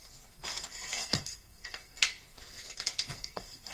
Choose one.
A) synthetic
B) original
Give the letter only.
A